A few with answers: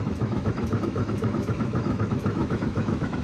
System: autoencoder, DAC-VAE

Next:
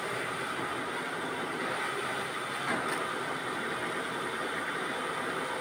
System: none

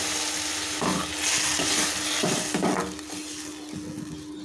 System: none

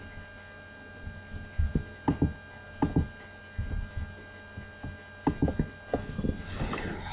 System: none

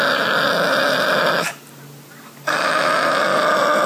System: none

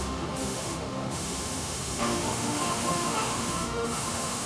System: autoencoder, DAC-VAE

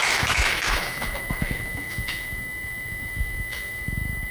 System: autoencoder, DAC-VAE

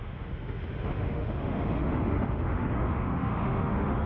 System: autoencoder, DAC-VAE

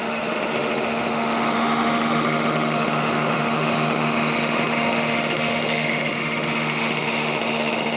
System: autoencoder, DAC-VAE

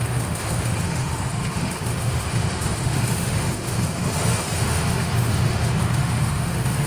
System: autoencoder, DAC-VAE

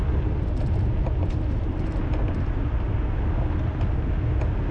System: none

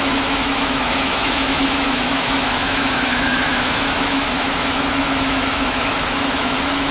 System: autoencoder, DAC-VAE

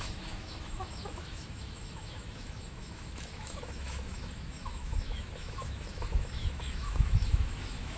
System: autoencoder, DAC-VAE